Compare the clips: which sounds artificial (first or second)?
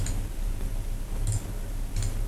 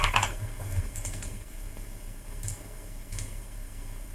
second